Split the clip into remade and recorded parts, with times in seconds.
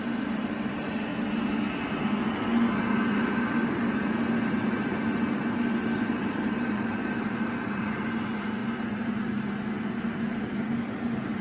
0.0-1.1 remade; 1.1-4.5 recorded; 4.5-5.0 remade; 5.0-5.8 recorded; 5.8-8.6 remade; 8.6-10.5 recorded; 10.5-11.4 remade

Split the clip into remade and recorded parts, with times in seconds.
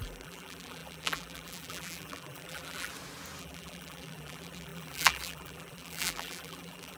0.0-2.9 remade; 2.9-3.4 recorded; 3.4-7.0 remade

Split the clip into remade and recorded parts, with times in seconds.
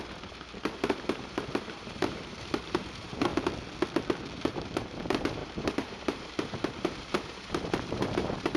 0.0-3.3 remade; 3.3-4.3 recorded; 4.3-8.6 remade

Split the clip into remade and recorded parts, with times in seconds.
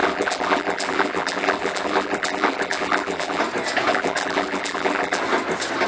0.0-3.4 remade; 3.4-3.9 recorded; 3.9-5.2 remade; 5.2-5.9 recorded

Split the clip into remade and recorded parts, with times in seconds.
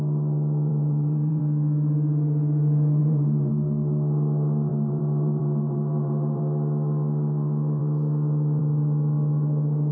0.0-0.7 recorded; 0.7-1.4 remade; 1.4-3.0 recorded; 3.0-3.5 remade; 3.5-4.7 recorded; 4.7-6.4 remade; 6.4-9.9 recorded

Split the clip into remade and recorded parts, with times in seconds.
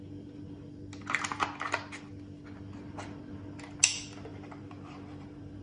0.0-4.3 recorded; 4.3-5.6 remade